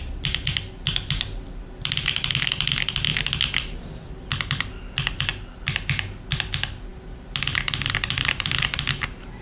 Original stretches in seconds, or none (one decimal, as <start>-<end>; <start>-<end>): 0.0-9.4